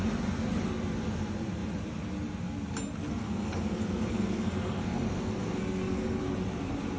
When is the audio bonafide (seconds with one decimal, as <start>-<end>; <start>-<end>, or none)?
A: 0.0-3.2; 6.2-7.0